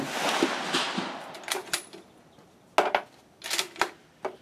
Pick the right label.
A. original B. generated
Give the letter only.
A